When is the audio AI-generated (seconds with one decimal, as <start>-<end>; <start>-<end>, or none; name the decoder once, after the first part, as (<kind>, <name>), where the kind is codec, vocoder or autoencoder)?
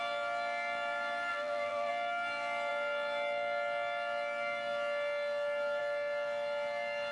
1.3-1.9 (vocoder, BigVGAN v2)